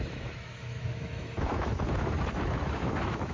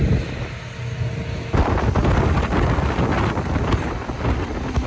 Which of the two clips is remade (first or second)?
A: first